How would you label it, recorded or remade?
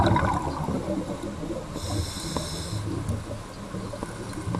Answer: recorded